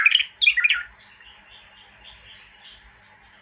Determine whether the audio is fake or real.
real